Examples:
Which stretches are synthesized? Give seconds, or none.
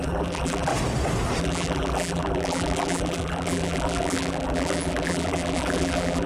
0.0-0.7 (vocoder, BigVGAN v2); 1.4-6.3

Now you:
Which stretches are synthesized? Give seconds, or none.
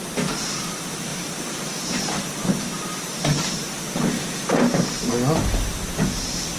1.1-5.1 (vocoder, BigVGAN v2)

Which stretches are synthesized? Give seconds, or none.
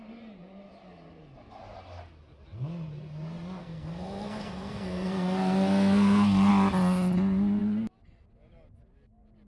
3.6-6.5 (codec, SNAC)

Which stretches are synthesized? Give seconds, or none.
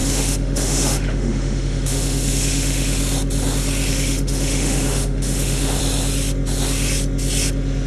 0.0-3.0 (autoencoder, DAC-VAE); 3.9-5.8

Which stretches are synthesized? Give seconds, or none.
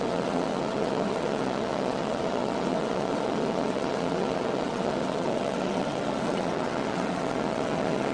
0.0-8.1 (vocoder, WaveNeXt)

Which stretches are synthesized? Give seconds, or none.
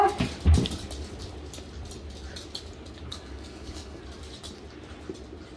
3.1-4.0 (codec, DAC)